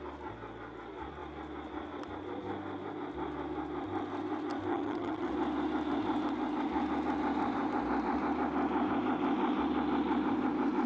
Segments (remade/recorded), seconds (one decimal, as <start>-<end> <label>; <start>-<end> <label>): 0.0-4.7 recorded; 4.7-5.3 remade; 5.3-10.9 recorded